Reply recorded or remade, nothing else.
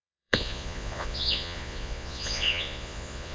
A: remade